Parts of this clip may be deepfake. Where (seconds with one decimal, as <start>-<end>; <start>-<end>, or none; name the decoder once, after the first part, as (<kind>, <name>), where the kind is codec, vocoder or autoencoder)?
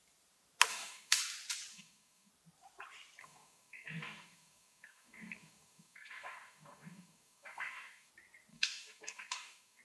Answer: 0.7-1.2 (codec, DAC); 1.7-2.3; 3.2-8.1; 8.5-9.8